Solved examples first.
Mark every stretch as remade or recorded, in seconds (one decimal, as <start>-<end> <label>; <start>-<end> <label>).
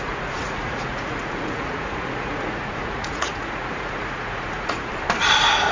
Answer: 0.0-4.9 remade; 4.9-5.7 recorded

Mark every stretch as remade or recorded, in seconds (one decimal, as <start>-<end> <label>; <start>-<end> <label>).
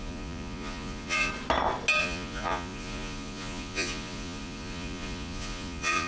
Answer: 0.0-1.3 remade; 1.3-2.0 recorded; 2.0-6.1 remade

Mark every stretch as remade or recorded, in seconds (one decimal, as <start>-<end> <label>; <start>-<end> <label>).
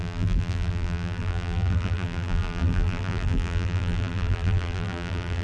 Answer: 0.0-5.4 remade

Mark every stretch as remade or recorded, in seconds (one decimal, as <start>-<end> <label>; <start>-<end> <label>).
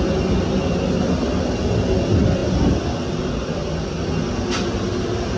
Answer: 0.0-5.4 recorded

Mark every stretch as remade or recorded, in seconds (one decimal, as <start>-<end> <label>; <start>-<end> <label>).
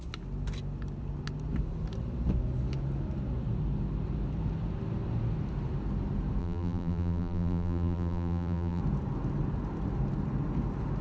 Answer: 0.0-6.4 recorded; 6.4-8.8 remade; 8.8-11.0 recorded